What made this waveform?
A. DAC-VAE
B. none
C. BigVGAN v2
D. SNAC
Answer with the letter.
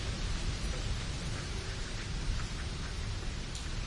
C